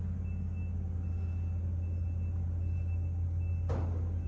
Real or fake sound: real